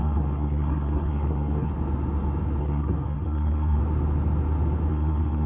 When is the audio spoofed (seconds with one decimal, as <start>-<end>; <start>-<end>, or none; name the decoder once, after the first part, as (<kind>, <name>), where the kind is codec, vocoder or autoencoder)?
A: 0.0-1.7 (codec, SNAC); 2.6-3.8; 4.9-5.5